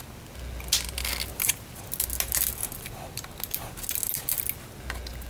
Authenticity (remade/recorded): recorded